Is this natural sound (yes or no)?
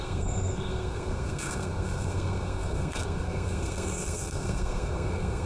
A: no